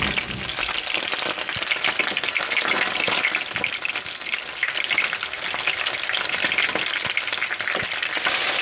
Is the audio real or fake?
real